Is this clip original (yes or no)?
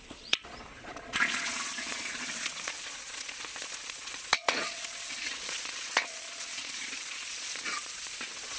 no